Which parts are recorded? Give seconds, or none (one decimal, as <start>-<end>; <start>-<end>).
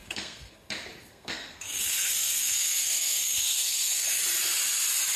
0.7-1.1; 4.2-5.2